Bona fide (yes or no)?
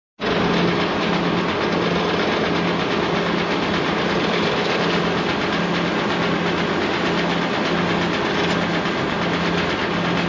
yes